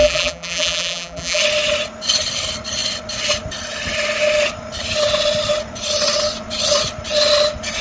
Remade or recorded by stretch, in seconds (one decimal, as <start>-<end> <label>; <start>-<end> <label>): 0.0-1.4 remade; 1.4-7.8 recorded